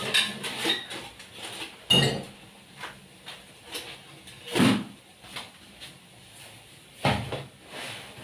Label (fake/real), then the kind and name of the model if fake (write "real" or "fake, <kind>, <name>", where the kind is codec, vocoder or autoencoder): real